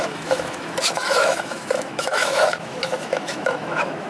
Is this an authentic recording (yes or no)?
no